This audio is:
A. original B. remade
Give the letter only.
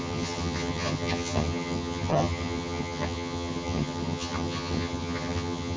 B